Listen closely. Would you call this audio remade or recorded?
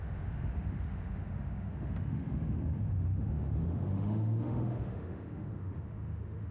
remade